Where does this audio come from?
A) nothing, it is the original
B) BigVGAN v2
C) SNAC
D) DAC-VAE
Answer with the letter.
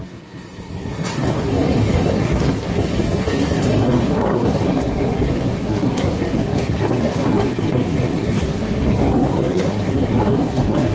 C